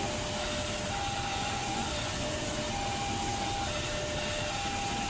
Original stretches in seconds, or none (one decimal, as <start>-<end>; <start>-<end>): 0.0-1.3; 2.6-5.1